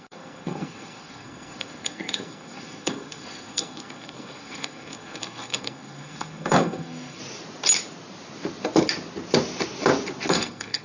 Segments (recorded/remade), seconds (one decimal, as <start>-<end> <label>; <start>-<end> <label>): 0.0-7.2 remade; 7.2-10.3 recorded; 10.3-10.8 remade